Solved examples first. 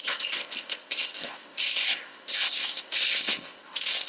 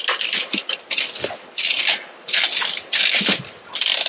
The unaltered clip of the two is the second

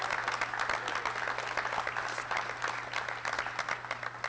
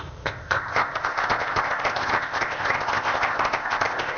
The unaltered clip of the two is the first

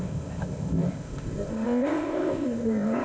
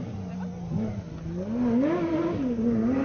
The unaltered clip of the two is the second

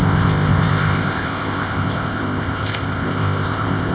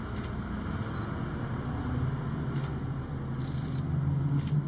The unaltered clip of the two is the second